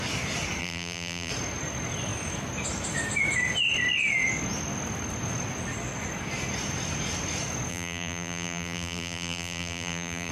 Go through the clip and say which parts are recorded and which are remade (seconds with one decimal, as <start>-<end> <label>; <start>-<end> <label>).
0.0-0.6 recorded; 0.6-1.3 remade; 1.3-7.7 recorded; 7.7-10.3 remade